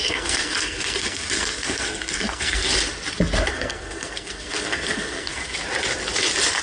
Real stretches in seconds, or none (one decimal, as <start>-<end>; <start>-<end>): 2.7-3.5; 5.4-6.6